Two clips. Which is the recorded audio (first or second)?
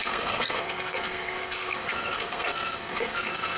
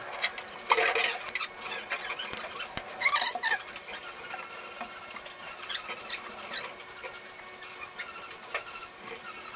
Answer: second